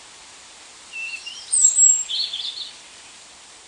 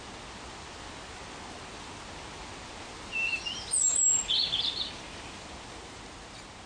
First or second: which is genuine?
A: second